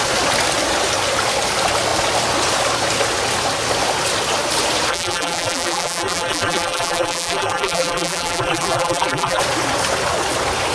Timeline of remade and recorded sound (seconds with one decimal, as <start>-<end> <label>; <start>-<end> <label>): 0.0-4.9 recorded; 4.9-9.4 remade; 9.4-10.7 recorded